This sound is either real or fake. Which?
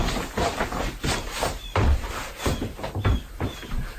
real